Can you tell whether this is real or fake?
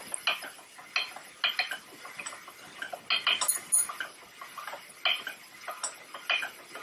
real